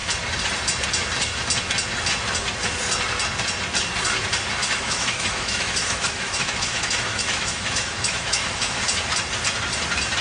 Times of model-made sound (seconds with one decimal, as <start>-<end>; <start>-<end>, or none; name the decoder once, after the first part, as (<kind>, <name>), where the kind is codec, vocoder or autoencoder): 4.6-8.8 (autoencoder, DAC-VAE)